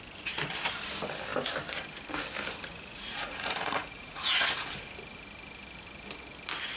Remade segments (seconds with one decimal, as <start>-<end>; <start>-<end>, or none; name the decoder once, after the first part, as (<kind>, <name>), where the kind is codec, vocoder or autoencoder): 2.7-4.7 (vocoder, Vocos)